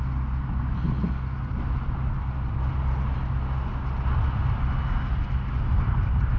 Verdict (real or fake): real